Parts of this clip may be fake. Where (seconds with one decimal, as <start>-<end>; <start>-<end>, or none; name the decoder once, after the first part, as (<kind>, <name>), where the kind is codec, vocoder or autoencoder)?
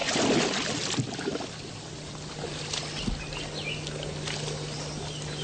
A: none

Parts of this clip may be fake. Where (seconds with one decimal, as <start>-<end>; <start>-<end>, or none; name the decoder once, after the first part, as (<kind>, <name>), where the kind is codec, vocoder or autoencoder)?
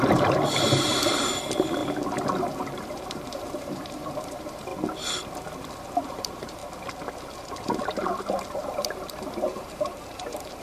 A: 0.0-1.8 (vocoder, BigVGAN v2); 2.6-4.7; 5.8-6.6; 8.5-10.6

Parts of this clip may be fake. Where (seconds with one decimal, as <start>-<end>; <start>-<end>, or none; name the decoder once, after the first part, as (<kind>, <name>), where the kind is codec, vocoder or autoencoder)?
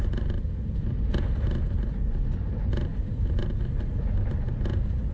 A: 2.9-3.5 (vocoder, BigVGAN v2)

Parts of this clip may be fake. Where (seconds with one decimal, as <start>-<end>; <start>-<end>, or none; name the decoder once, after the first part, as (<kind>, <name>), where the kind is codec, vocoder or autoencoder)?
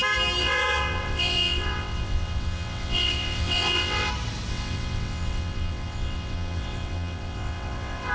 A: 0.4-4.1 (vocoder, WaveNeXt); 4.5-8.1